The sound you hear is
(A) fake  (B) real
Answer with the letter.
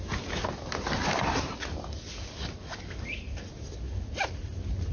B